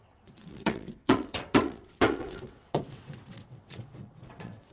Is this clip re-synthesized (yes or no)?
yes